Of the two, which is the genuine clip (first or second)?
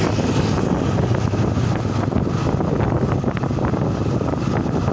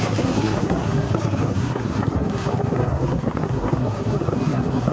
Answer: first